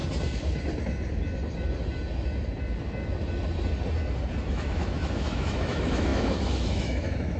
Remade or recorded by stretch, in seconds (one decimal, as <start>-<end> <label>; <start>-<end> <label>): 0.0-4.4 recorded; 4.4-7.4 remade